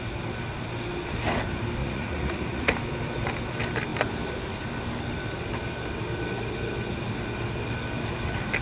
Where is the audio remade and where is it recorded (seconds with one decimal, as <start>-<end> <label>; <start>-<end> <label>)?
0.0-1.8 recorded; 1.8-2.7 remade; 2.7-8.6 recorded